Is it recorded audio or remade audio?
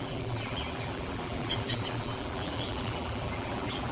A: remade